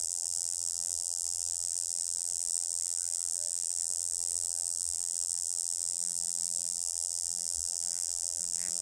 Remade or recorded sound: remade